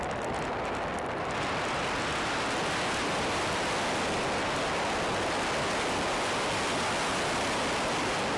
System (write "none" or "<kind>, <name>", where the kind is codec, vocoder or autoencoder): none